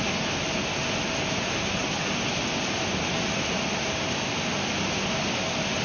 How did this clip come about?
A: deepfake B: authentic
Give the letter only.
B